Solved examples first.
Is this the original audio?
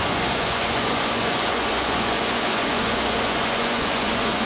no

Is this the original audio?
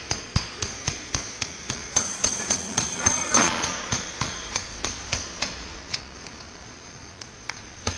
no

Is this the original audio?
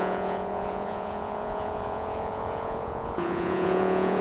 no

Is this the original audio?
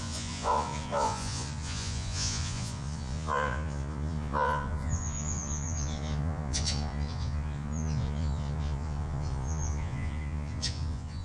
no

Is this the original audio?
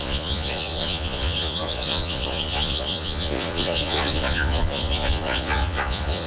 no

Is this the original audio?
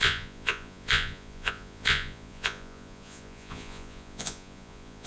no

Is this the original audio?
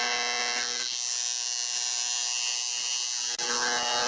yes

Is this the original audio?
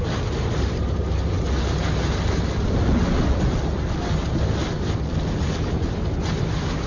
yes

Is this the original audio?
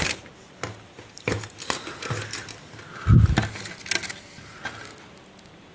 yes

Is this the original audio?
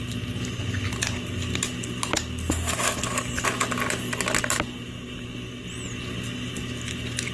yes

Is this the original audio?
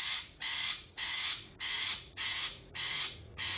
no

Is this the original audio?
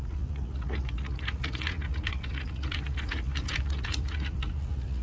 no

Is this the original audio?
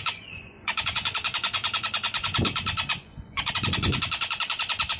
no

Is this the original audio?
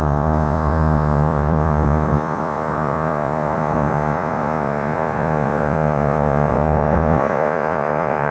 no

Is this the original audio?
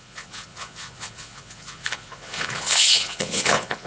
no